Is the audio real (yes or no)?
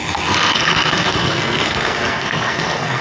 no